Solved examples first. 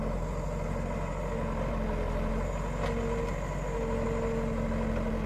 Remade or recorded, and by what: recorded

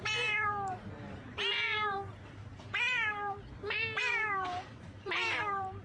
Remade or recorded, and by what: remade, vocoder, BigVGAN v2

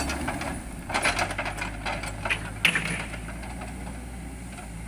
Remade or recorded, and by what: recorded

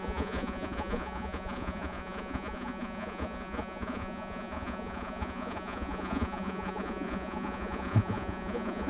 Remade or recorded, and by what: remade, vocoder, Vocos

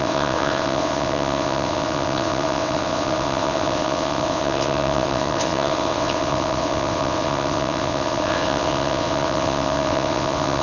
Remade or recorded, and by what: remade, vocoder, WaveNeXt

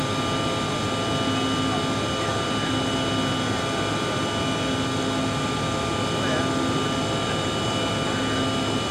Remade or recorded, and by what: recorded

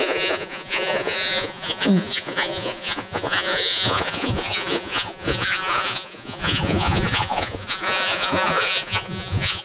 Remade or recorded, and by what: remade, vocoder, Vocos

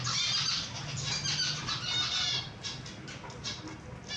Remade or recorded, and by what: recorded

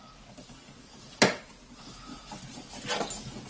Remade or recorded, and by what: recorded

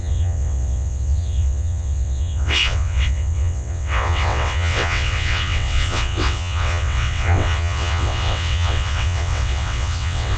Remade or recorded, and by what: remade, vocoder, WaveNeXt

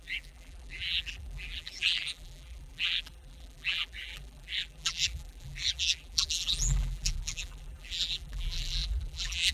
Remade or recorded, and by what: remade, vocoder, BigVGAN v2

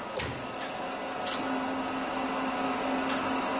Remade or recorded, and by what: recorded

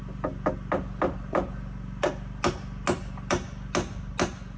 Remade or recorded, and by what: recorded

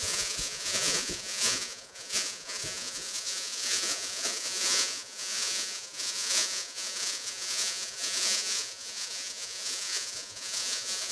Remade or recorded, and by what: remade, vocoder, Vocos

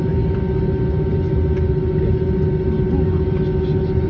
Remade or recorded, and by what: recorded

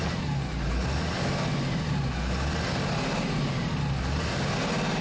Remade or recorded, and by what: recorded